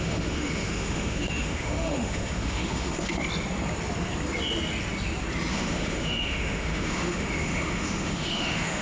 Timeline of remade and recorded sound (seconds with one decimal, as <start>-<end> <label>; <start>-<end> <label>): 0.0-3.2 remade; 3.2-5.5 recorded; 5.5-8.8 remade